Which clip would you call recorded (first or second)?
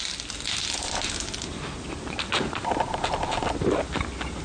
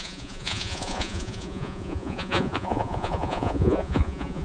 first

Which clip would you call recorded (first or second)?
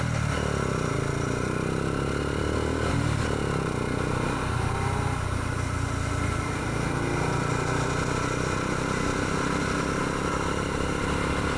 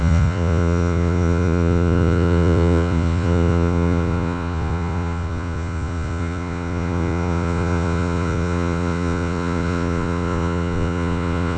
first